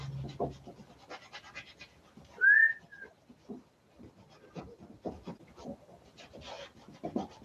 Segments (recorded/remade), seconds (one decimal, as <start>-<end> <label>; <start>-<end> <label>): 0.0-7.4 recorded